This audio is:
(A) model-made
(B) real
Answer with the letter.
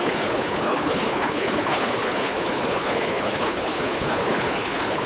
A